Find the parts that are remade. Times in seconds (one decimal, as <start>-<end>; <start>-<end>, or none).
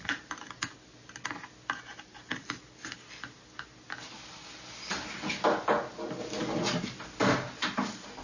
none